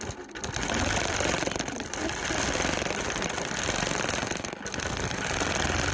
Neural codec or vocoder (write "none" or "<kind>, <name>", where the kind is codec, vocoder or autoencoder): none